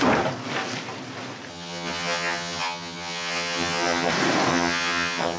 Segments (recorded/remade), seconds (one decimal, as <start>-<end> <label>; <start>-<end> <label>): 0.0-1.5 recorded; 1.5-4.1 remade; 4.1-4.5 recorded; 4.5-5.4 remade